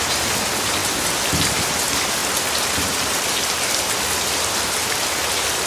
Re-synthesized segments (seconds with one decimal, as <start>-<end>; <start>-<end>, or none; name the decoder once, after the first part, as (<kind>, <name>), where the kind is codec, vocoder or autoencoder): none